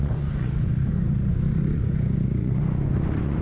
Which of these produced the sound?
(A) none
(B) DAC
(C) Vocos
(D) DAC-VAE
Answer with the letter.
C